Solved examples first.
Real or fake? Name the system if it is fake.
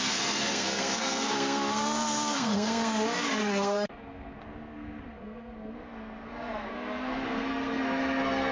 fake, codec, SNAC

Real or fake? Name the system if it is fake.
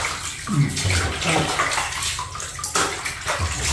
real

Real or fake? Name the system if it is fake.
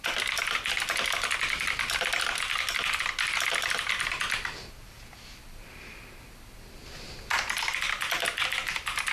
real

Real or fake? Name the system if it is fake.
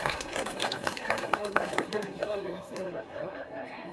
fake, codec, SNAC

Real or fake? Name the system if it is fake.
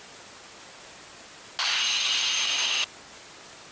real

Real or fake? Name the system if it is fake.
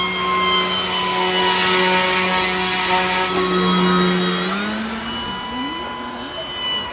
real